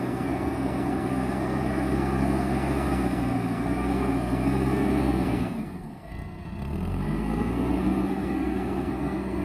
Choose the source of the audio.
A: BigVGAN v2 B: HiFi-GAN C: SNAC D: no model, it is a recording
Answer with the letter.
C